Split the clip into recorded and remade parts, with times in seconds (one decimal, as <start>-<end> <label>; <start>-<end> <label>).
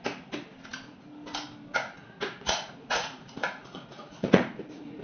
0.0-2.0 recorded; 2.0-5.0 remade